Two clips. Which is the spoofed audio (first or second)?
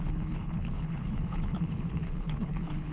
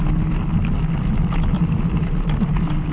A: first